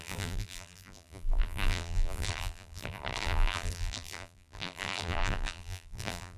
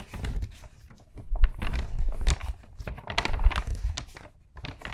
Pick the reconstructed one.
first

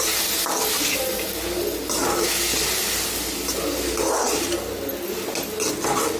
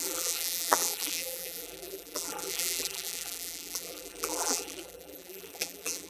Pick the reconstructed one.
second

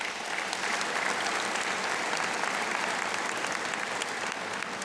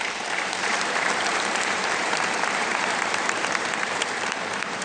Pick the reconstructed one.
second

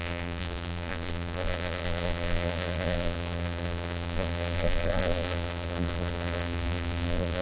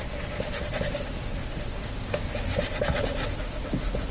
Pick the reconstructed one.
first